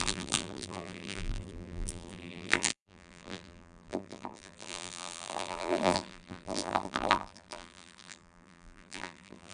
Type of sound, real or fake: fake